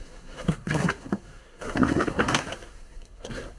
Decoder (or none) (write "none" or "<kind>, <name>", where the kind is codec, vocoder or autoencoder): codec, SNAC